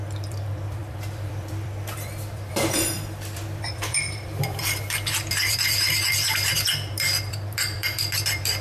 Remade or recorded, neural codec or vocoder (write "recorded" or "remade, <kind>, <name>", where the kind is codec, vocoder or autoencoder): remade, vocoder, BigVGAN v2